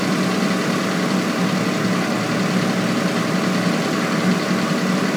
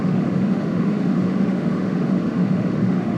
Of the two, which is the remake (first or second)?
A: second